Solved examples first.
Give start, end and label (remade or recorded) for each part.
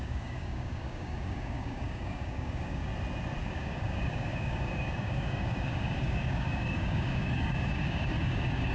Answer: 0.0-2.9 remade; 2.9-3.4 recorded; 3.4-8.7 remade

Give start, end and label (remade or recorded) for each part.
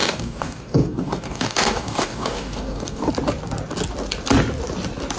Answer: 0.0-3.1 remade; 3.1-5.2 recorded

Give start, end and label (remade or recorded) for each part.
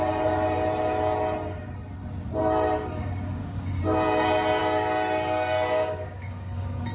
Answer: 0.0-2.4 recorded; 2.4-3.8 remade; 3.8-4.6 recorded; 4.6-6.9 remade